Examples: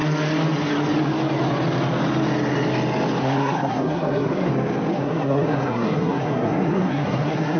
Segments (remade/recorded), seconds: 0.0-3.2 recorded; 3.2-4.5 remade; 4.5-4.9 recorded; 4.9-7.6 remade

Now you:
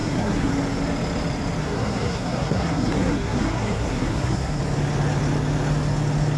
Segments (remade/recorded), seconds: 0.0-0.5 remade; 0.5-1.6 recorded; 1.6-4.6 remade; 4.6-6.4 recorded

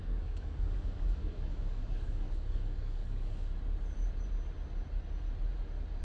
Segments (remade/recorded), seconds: 0.0-3.6 remade; 3.6-6.0 recorded

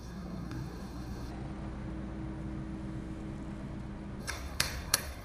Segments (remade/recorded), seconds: 0.0-1.3 remade; 1.3-4.2 recorded; 4.2-5.2 remade

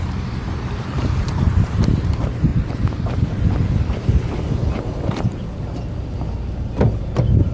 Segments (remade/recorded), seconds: 0.0-2.5 remade; 2.5-7.0 recorded; 7.0-7.5 remade